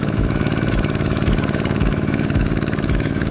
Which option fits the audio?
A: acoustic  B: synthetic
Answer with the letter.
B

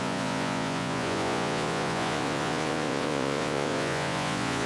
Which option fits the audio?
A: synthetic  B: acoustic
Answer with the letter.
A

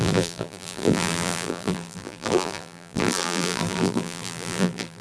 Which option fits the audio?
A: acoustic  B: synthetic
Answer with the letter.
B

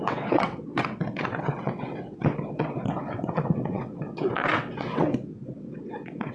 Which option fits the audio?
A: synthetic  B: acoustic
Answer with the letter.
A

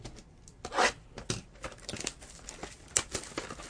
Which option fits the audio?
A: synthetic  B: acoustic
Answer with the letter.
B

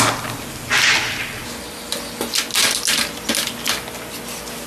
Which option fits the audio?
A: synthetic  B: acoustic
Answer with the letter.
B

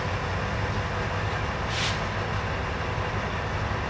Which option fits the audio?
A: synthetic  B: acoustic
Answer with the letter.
B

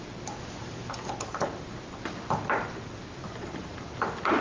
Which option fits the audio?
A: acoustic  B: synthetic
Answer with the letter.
A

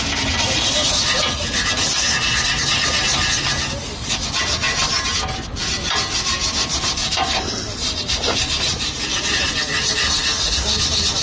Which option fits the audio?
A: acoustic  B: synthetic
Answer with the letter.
A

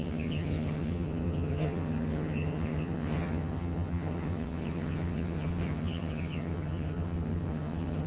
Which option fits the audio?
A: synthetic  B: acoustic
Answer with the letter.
A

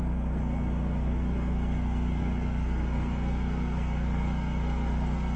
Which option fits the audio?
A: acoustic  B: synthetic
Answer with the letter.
B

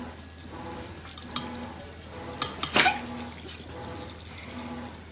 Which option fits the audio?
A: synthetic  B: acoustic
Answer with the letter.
B